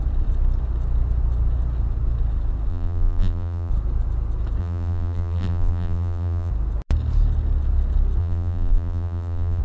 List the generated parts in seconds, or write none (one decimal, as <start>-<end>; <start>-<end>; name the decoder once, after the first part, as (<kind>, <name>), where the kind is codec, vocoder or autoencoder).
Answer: 2.7-3.7 (vocoder, BigVGAN v2); 4.6-6.5; 8.2-9.6